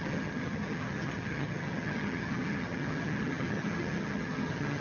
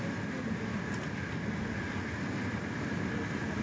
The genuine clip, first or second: second